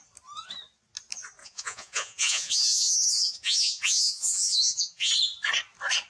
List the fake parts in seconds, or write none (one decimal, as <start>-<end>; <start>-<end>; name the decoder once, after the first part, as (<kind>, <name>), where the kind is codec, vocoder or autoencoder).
1.4-5.1 (vocoder, Vocos)